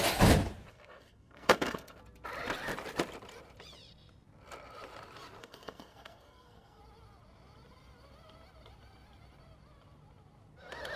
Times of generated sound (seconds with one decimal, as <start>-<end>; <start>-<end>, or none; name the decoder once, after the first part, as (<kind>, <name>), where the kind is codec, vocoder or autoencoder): 0.7-2.0 (codec, SNAC); 5.4-6.8